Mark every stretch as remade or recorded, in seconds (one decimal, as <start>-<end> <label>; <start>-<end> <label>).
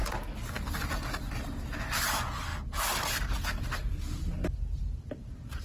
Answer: 0.0-4.3 recorded; 4.3-5.6 remade